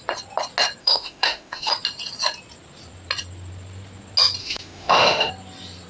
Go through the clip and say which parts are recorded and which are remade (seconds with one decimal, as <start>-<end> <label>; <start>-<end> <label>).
0.0-0.8 recorded; 0.8-1.7 remade; 1.7-4.4 recorded; 4.4-5.3 remade; 5.3-5.9 recorded